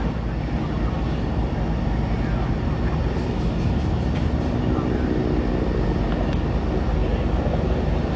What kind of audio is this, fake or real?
real